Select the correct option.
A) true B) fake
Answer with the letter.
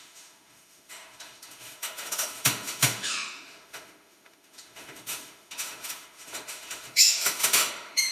B